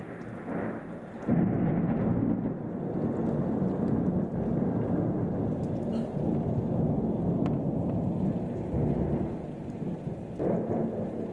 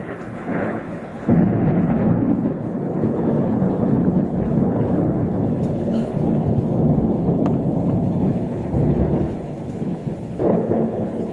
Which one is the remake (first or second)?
second